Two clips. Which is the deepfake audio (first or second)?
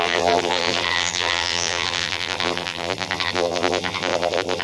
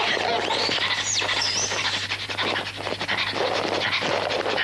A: first